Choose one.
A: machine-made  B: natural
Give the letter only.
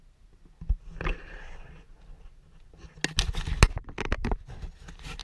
B